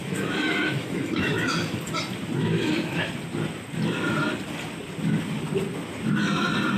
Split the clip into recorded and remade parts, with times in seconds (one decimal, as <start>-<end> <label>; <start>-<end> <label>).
0.0-1.8 remade; 1.8-2.4 recorded; 2.4-3.1 remade; 3.1-6.8 recorded